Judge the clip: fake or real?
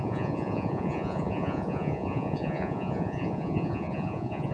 fake